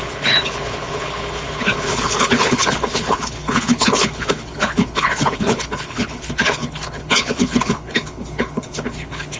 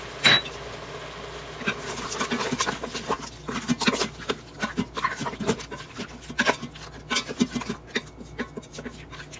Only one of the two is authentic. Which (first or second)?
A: second